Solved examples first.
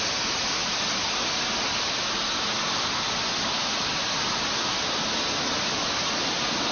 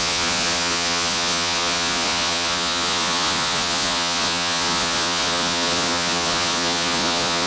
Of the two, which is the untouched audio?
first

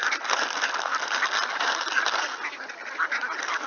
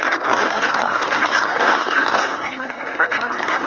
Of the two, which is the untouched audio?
first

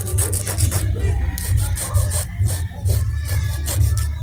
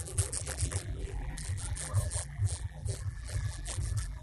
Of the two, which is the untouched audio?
first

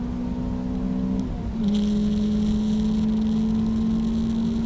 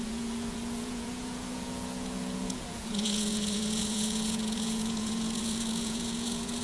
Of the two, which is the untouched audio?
first